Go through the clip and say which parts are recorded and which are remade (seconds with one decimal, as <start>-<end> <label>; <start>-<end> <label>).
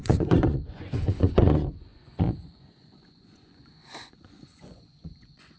0.0-5.6 remade